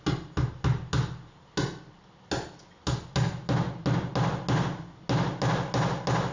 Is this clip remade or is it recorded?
recorded